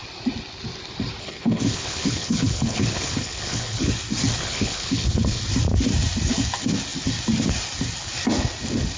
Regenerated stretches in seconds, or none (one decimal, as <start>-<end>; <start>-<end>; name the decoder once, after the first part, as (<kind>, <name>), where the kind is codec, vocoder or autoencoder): 1.2-3.9 (codec, HILCodec); 4.4-5.4